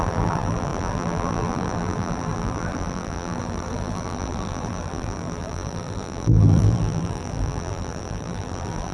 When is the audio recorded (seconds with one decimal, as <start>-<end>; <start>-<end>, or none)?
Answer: none